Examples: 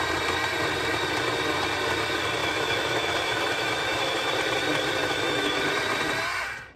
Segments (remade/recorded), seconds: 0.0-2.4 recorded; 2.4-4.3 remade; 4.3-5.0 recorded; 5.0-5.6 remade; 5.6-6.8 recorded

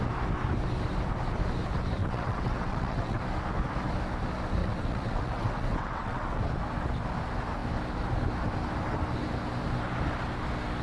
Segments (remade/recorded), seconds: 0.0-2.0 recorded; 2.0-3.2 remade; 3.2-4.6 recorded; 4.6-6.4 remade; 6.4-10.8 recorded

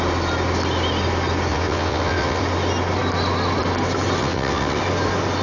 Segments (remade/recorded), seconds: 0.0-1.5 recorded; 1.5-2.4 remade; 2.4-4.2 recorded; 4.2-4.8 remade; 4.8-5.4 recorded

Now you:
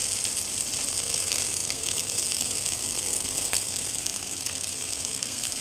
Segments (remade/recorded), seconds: 0.0-0.9 recorded; 0.9-5.6 remade